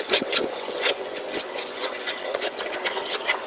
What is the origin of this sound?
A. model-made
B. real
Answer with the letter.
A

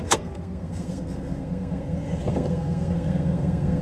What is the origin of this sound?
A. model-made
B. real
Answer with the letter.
A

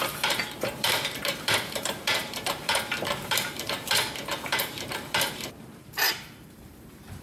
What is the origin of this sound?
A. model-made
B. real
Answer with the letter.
A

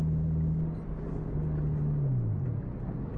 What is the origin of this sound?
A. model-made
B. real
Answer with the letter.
B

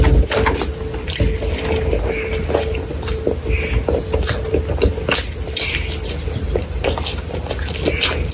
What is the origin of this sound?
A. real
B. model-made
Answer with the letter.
A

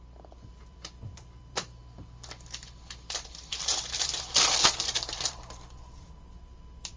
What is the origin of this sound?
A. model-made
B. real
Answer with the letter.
A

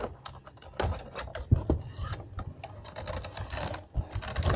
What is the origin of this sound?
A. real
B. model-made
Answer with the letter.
A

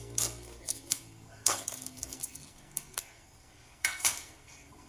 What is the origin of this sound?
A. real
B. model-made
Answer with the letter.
B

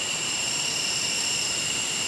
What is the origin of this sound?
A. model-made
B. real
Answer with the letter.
A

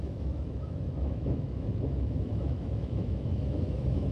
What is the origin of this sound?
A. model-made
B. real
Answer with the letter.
A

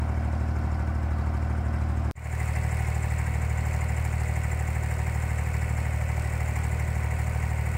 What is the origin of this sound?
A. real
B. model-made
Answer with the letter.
A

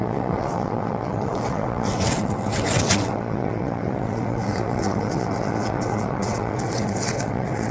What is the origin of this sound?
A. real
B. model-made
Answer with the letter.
B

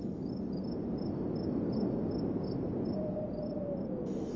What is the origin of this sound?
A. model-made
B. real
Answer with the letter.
B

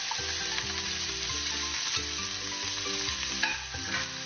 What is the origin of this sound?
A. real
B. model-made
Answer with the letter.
A